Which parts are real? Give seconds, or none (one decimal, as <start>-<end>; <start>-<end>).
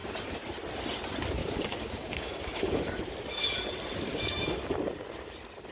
0.0-1.4; 2.8-4.1; 4.7-5.7